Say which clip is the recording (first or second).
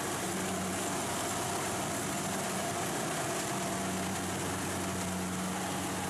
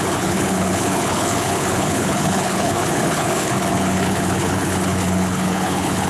first